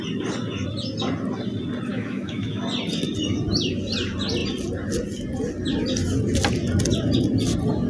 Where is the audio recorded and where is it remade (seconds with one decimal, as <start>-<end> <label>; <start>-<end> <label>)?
0.0-1.9 recorded; 1.9-2.6 remade; 2.6-7.9 recorded